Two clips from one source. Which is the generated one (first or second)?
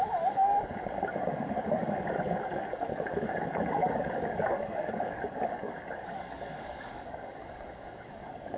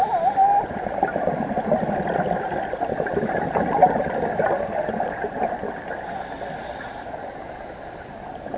first